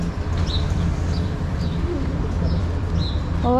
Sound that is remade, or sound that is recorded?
remade